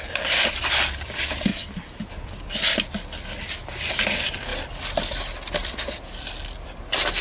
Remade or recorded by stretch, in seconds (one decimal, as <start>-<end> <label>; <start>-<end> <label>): 0.0-4.5 recorded; 4.5-5.2 remade; 5.2-7.2 recorded

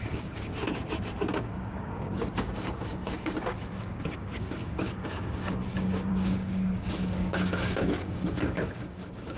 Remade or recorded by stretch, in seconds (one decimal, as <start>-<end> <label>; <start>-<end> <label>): 0.0-0.5 remade; 0.5-1.3 recorded; 1.3-9.4 remade